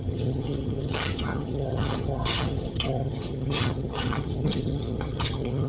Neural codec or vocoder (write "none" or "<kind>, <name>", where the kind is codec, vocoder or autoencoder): vocoder, HiFi-GAN